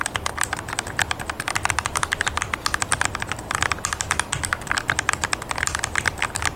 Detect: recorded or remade recorded